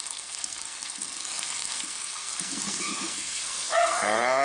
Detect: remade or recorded remade